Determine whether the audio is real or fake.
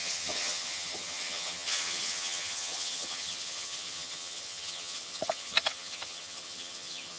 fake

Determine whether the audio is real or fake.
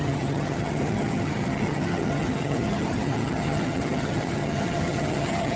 fake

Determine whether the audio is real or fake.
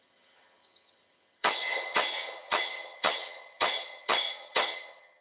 fake